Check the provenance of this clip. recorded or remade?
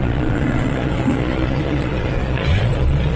remade